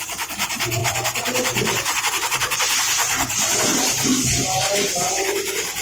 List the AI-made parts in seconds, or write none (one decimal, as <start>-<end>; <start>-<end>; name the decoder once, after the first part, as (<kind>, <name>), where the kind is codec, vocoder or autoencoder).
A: 0.0-2.4 (vocoder, BigVGAN v2); 3.6-4.1